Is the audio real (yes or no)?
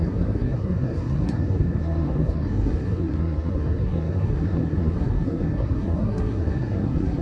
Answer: no